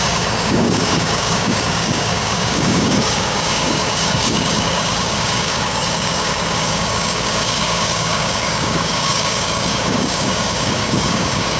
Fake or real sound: fake